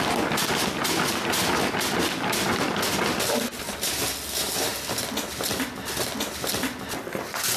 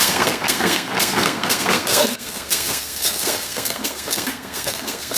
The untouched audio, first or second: first